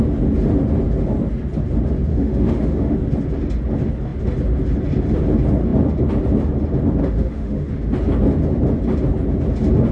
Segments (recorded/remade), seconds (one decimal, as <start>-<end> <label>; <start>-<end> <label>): 0.0-2.1 recorded; 2.1-3.0 remade; 3.0-7.0 recorded; 7.0-7.7 remade; 7.7-9.9 recorded